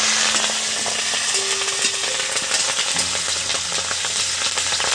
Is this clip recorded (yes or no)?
yes